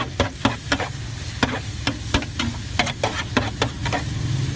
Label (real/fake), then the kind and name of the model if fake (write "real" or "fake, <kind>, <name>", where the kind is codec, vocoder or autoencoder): real